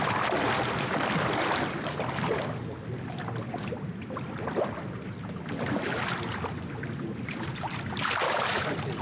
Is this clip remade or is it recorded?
recorded